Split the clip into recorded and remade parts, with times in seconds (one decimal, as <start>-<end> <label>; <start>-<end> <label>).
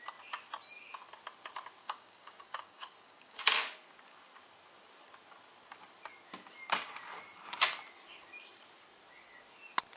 0.0-1.8 recorded; 1.8-3.4 remade; 3.4-10.0 recorded